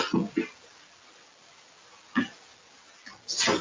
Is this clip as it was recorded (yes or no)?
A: yes